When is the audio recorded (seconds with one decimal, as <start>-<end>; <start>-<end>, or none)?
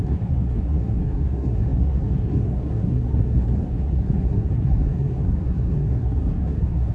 none